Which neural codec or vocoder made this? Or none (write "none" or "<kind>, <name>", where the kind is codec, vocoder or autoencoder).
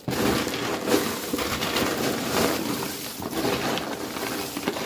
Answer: none